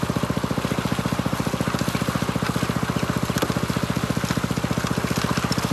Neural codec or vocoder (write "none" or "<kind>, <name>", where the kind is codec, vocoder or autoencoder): none